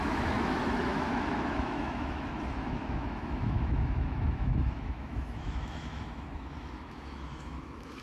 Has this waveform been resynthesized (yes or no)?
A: yes